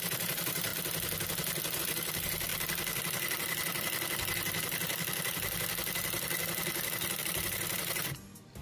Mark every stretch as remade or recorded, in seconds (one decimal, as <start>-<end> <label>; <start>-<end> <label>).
0.0-0.7 remade; 0.7-1.8 recorded; 1.8-2.5 remade; 2.5-7.2 recorded; 7.2-8.6 remade